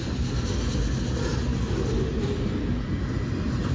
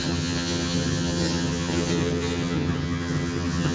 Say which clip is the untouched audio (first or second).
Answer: first